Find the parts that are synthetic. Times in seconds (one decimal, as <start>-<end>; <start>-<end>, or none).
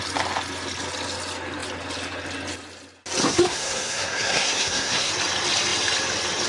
3.2-5.1